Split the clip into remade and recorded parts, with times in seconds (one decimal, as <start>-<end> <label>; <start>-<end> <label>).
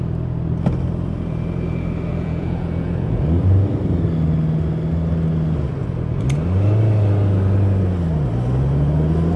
0.0-2.1 recorded; 2.1-3.2 remade; 3.2-9.4 recorded